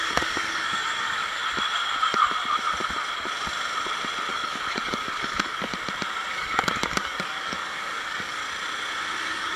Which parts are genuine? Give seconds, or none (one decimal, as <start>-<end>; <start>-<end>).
1.4-4.3; 5.7-6.3; 8.4-9.2